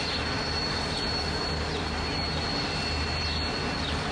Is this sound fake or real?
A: real